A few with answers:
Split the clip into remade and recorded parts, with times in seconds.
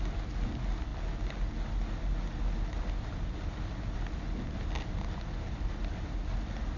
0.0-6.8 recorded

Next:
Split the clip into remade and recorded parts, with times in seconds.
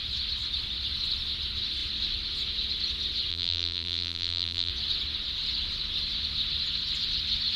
0.0-3.3 recorded; 3.3-4.7 remade; 4.7-7.6 recorded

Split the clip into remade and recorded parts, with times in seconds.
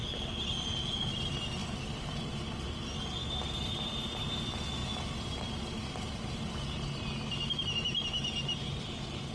0.0-1.6 recorded; 1.6-2.2 remade; 2.2-9.3 recorded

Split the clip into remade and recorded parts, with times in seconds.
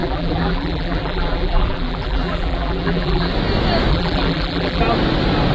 0.0-3.3 remade; 3.3-3.9 recorded; 3.9-4.8 remade; 4.8-5.5 recorded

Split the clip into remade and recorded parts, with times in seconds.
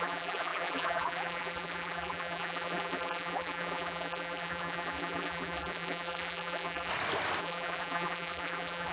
0.0-6.9 remade; 6.9-7.4 recorded; 7.4-8.9 remade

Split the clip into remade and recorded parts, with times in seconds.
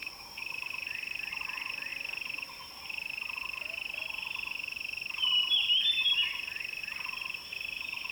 0.0-1.9 remade; 1.9-6.8 recorded; 6.8-8.1 remade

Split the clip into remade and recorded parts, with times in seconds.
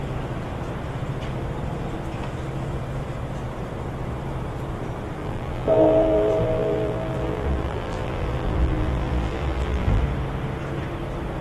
0.0-5.2 recorded; 5.2-10.0 remade; 10.0-11.4 recorded